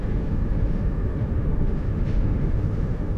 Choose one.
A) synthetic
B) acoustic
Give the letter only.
A